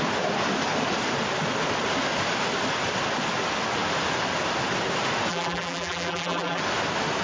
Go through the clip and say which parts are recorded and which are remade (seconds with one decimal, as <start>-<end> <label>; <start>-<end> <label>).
0.0-5.3 recorded; 5.3-6.6 remade; 6.6-7.2 recorded